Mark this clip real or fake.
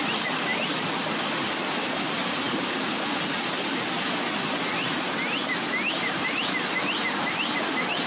real